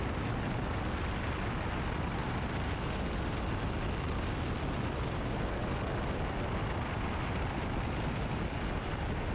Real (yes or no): yes